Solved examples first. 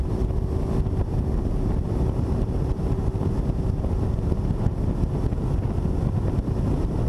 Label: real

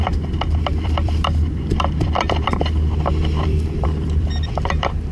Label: fake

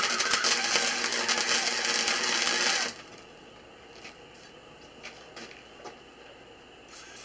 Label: real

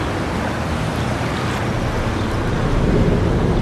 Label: real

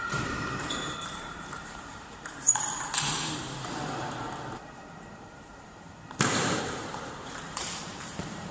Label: fake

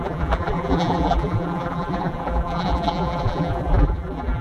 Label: fake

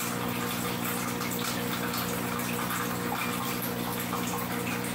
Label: real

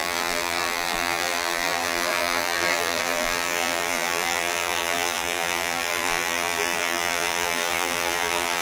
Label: fake